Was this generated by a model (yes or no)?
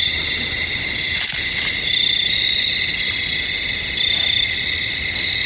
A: no